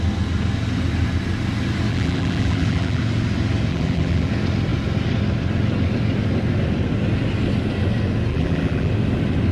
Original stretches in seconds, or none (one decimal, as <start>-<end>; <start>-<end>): 0.0-1.9; 3.0-3.7; 4.3-8.3; 8.9-9.5